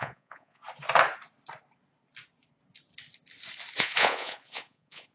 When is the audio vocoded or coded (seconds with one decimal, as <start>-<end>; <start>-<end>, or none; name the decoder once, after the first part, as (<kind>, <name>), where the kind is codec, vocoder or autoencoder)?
0.0-0.6 (vocoder, Vocos); 3.7-5.1